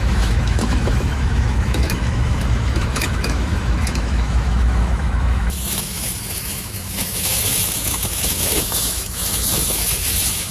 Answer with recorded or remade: remade